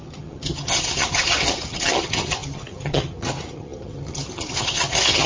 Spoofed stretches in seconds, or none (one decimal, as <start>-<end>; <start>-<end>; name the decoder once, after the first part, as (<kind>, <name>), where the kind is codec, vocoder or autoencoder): 0.0-5.3 (vocoder, HiFi-GAN)